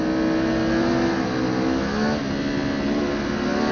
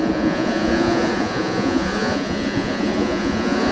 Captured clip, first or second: first